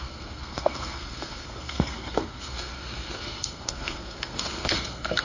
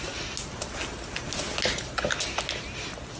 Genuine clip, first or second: second